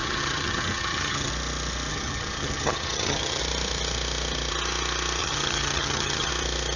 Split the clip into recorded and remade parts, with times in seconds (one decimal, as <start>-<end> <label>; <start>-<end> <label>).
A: 0.0-1.3 remade; 1.3-1.9 recorded; 1.9-3.4 remade; 3.4-5.2 recorded; 5.2-6.3 remade; 6.3-6.8 recorded